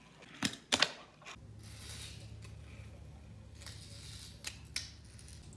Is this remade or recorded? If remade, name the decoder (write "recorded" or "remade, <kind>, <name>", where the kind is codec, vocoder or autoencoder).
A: recorded